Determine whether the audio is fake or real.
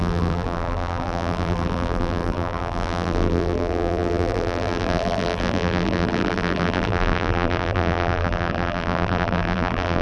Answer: fake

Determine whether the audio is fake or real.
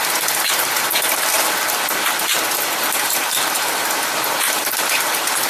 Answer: fake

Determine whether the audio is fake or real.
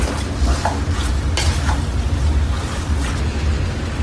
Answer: real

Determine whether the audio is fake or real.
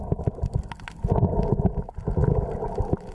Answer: real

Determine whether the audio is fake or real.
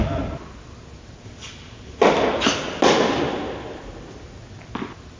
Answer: real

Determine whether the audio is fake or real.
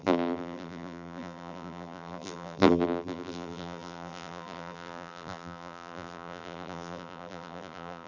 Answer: fake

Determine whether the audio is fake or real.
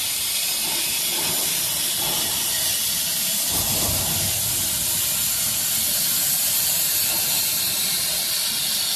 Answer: real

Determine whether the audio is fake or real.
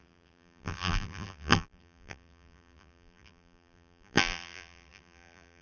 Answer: fake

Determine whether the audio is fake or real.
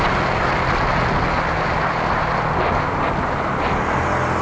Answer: real